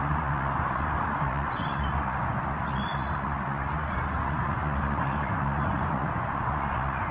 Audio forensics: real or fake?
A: fake